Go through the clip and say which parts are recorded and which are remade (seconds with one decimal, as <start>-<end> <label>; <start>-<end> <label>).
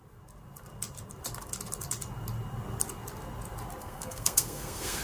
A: 0.0-3.8 recorded; 3.8-5.0 remade